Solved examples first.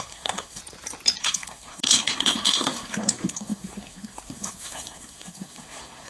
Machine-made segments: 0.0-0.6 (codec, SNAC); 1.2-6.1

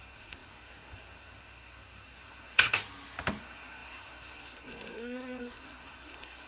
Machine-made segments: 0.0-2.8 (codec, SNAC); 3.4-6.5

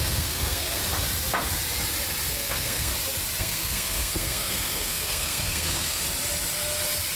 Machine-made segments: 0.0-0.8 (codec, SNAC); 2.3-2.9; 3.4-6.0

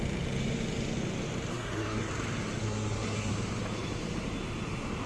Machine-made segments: 1.5-2.1 (codec, SNAC); 2.6-3.3

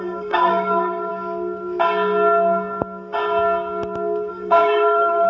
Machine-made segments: 0.0-1.1 (codec, SNAC); 4.3-5.3

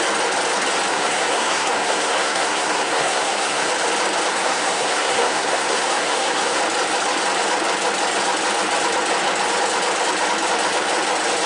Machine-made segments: 0.9-3.7 (codec, SNAC); 4.3-6.6